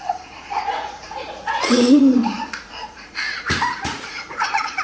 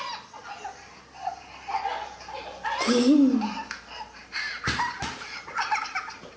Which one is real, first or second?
second